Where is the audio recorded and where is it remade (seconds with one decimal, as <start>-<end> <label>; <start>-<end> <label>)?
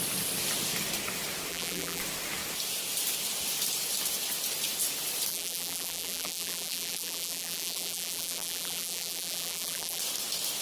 0.0-1.5 recorded; 1.5-2.0 remade; 2.0-5.3 recorded; 5.3-10.0 remade; 10.0-10.6 recorded